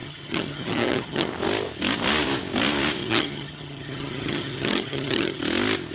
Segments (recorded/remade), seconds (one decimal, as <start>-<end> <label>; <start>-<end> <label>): 0.0-1.3 remade; 1.3-3.0 recorded; 3.0-5.4 remade; 5.4-5.9 recorded